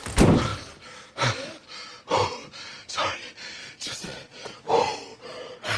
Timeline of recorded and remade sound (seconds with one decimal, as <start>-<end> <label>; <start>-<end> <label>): 0.0-3.6 recorded; 3.6-4.6 remade; 4.6-5.1 recorded; 5.1-5.8 remade